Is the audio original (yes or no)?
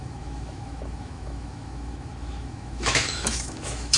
no